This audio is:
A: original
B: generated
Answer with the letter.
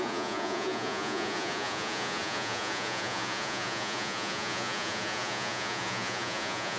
B